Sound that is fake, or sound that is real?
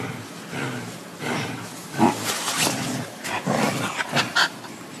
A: fake